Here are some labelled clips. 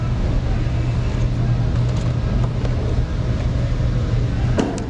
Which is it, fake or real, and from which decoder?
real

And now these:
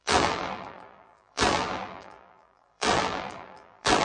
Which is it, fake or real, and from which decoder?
fake, vocoder, BigVGAN v2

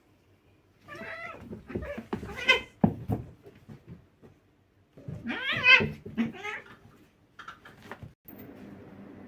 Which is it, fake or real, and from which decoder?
real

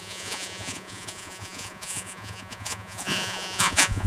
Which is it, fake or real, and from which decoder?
fake, vocoder, Vocos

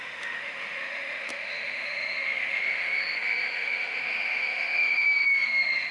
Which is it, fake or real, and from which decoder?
fake, autoencoder, DAC-VAE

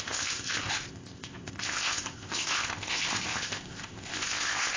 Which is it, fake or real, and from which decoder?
fake, codec, ZipCodec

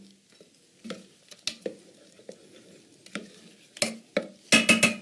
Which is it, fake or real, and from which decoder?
real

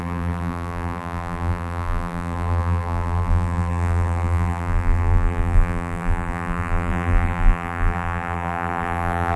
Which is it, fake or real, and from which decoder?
fake, vocoder, BigVGAN v2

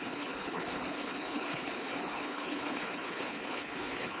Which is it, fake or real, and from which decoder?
fake, codec, HILCodec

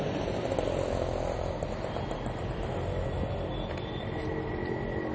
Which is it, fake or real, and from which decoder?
real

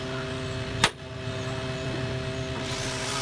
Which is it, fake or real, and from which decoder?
real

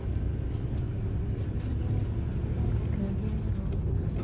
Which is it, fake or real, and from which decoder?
real